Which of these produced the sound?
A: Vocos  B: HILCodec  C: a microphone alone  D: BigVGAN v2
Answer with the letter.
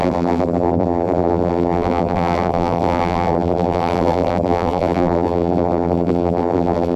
D